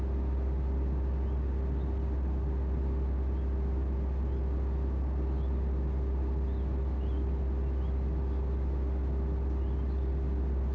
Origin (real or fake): real